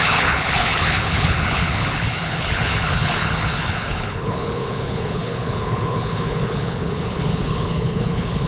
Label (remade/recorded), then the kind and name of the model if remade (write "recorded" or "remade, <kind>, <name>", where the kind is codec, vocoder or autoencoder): remade, codec, HILCodec